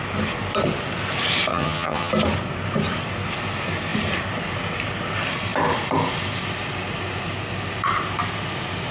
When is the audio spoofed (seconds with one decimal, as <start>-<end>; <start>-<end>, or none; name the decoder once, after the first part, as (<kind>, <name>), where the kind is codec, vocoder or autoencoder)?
1.5-2.1 (vocoder, HiFi-GAN)